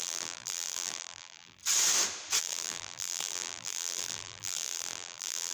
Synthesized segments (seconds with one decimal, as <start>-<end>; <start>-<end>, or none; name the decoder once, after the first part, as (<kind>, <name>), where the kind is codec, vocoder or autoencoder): 0.0-1.6 (vocoder, BigVGAN v2); 2.4-5.5

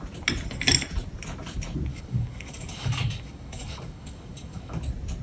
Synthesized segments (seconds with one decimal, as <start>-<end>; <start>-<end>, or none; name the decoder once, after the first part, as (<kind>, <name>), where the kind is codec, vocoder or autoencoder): 1.9-4.8 (codec, DAC)

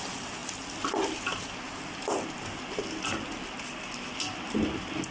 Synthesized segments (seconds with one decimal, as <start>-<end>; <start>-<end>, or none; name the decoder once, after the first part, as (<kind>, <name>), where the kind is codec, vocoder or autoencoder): none